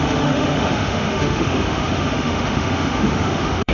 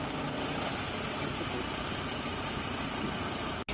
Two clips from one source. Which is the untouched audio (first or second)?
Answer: second